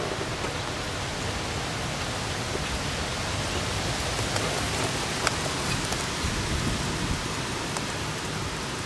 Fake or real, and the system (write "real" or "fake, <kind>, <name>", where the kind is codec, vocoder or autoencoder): real